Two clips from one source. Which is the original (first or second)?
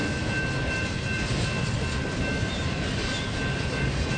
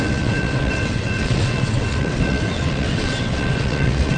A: first